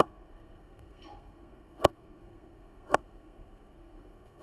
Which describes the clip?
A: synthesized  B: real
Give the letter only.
A